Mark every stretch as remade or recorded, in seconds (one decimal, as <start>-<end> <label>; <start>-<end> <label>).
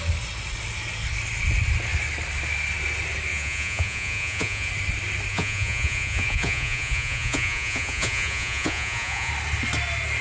0.0-3.3 recorded; 3.3-4.7 remade; 4.7-5.3 recorded; 5.3-9.3 remade; 9.3-10.2 recorded